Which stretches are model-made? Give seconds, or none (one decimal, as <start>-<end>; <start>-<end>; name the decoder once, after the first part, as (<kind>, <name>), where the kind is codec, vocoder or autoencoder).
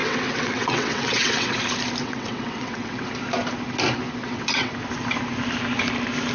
0.0-1.6 (vocoder, WaveNeXt); 2.0-3.1; 4.2-4.7